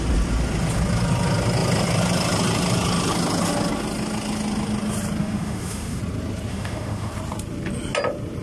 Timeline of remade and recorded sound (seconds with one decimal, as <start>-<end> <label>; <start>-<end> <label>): 0.0-5.2 recorded; 5.2-6.0 remade; 6.0-6.5 recorded; 6.5-7.1 remade; 7.1-8.4 recorded